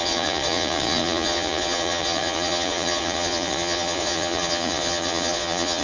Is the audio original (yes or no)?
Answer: no